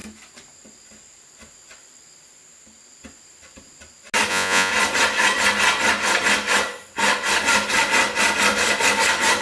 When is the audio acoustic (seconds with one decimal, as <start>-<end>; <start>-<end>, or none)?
0.0-4.3; 4.7-9.4